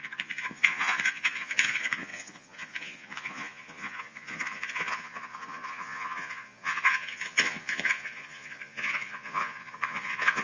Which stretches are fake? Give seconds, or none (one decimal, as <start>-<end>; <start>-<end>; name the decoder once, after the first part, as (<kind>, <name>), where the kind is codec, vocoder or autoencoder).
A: 0.0-10.4 (vocoder, Vocos)